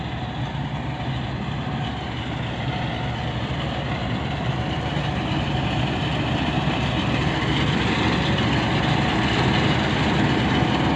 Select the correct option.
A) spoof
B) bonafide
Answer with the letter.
B